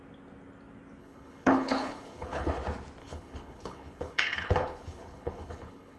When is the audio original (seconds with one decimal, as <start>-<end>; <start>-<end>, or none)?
0.0-1.0; 2.6-3.0